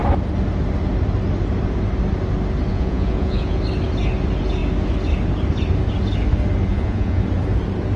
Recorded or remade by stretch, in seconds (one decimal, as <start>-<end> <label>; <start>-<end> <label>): 0.0-2.7 recorded; 2.7-3.6 remade; 3.6-6.7 recorded; 6.7-7.2 remade; 7.2-8.0 recorded